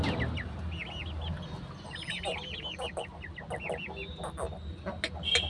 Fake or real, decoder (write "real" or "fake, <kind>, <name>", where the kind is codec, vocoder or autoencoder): real